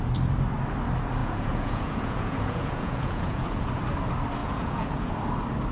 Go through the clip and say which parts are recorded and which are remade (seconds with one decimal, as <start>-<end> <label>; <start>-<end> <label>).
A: 0.0-1.2 recorded; 1.2-3.7 remade; 3.7-4.4 recorded; 4.4-5.1 remade; 5.1-5.7 recorded